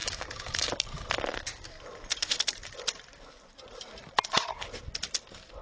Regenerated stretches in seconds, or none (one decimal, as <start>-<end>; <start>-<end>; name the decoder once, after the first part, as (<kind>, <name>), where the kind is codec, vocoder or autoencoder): 0.0-0.7 (codec, DAC)